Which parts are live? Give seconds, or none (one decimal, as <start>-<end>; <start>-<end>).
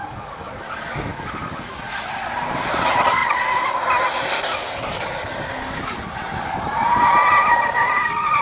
0.6-1.1; 1.7-8.4